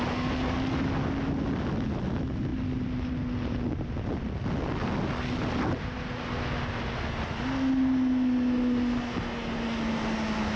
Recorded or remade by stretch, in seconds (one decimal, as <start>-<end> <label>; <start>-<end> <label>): 0.0-10.6 recorded